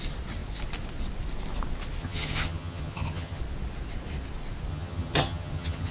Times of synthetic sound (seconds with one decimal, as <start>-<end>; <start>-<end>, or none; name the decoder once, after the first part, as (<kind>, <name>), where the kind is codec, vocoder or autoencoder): 2.0-3.4 (vocoder, HiFi-GAN); 4.7-5.9